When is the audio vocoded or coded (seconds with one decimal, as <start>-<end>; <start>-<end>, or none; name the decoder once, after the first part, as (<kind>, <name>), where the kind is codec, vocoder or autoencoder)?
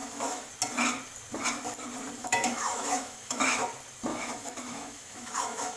0.0-0.5 (autoencoder, DAC-VAE); 2.2-3.6; 4.1-5.8